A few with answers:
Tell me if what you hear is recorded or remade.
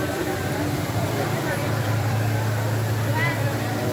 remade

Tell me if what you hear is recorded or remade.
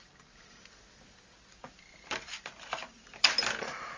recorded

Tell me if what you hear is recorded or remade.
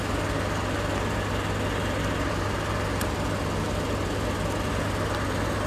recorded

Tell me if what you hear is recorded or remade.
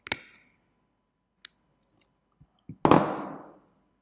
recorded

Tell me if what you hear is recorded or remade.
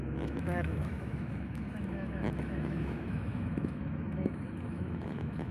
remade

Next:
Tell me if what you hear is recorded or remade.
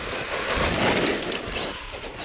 recorded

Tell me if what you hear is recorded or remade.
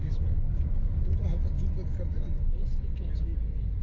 recorded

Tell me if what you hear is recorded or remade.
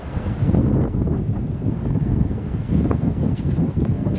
remade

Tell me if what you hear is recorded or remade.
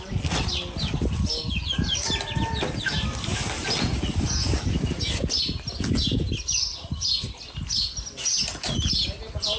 recorded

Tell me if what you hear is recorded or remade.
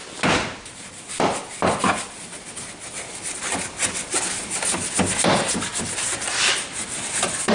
recorded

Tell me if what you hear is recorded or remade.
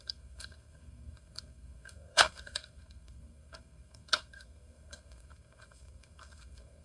remade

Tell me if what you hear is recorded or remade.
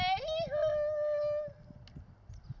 recorded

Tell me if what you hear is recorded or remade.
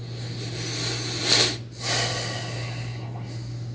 recorded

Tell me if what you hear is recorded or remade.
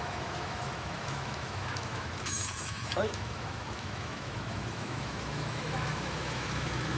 remade